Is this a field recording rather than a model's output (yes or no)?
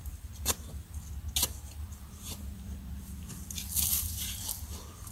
yes